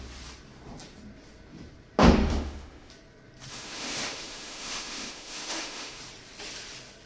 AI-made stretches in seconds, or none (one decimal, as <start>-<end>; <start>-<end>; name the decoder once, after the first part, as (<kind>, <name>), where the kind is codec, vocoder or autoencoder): 2.2-2.9 (autoencoder, DAC-VAE); 3.5-6.0